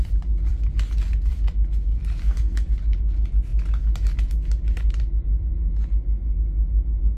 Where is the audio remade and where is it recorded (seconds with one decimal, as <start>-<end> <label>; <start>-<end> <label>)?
0.0-2.2 recorded; 2.2-2.7 remade; 2.7-7.2 recorded